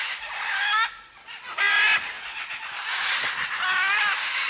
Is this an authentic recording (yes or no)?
yes